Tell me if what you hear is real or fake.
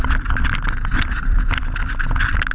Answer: real